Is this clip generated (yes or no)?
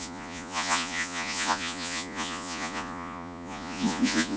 yes